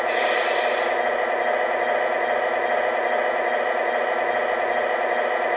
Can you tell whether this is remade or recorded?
recorded